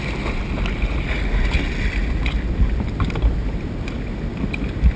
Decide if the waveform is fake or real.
real